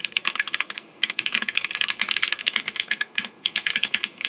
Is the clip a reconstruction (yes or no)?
yes